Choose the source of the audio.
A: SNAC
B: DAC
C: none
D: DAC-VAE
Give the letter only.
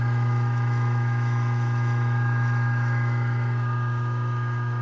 D